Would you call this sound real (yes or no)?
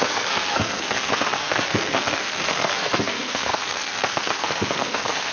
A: no